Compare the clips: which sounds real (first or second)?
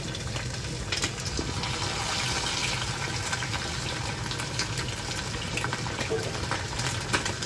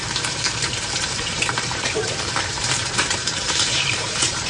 first